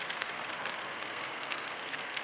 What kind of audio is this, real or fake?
fake